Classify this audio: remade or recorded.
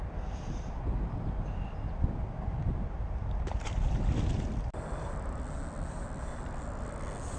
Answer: recorded